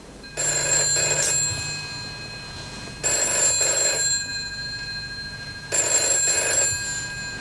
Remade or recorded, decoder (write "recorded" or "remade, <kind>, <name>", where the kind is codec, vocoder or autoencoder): recorded